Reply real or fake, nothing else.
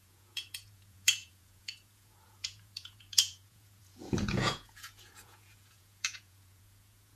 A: fake